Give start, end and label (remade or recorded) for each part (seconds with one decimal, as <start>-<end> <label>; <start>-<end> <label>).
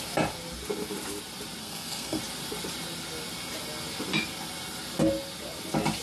0.0-1.6 recorded; 1.6-2.2 remade; 2.2-6.0 recorded